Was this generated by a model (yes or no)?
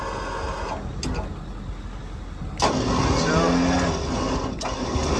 no